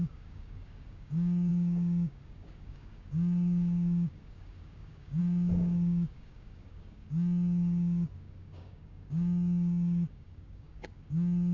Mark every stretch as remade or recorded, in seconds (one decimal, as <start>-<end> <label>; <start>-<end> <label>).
0.0-11.5 remade